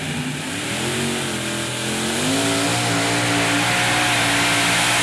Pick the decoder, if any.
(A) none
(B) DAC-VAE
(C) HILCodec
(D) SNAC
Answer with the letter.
A